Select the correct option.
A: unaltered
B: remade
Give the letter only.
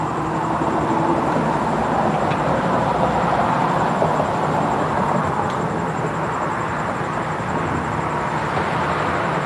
B